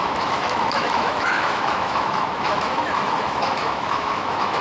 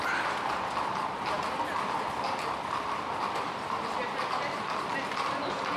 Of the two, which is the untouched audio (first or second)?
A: second